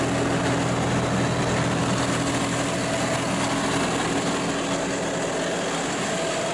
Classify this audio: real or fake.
real